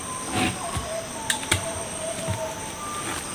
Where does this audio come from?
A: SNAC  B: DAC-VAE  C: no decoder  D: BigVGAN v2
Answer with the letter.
C